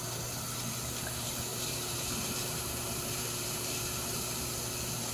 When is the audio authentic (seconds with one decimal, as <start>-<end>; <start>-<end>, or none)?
0.0-1.5; 4.6-5.1